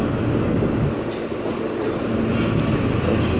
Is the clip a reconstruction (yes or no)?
no